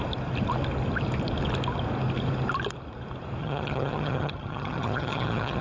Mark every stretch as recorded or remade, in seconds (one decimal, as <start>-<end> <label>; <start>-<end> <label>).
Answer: 0.0-3.4 recorded; 3.4-5.6 remade